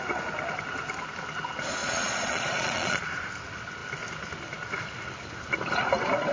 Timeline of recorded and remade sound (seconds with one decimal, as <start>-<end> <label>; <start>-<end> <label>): 0.0-1.8 recorded; 1.8-3.0 remade; 3.0-6.3 recorded